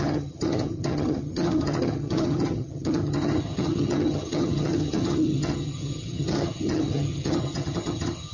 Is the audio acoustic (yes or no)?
no